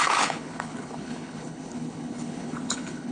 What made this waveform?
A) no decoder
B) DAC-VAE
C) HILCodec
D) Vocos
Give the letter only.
C